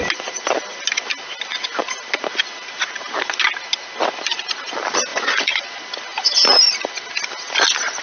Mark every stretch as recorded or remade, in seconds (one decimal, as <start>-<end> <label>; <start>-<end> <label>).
0.0-5.1 recorded; 5.1-5.8 remade; 5.8-8.0 recorded